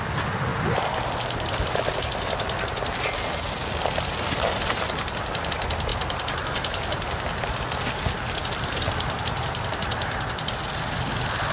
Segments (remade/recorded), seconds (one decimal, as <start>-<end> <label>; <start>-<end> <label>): 0.0-0.5 recorded; 0.5-5.5 remade; 5.5-5.9 recorded; 5.9-7.6 remade; 7.6-8.4 recorded; 8.4-10.8 remade; 10.8-11.5 recorded